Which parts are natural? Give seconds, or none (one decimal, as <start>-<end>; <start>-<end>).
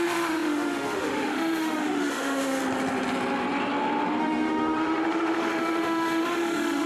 2.6-4.2